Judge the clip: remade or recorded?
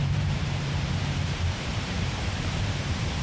remade